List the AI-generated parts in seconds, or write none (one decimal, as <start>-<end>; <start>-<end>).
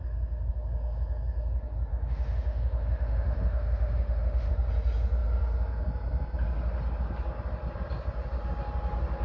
1.9-4.5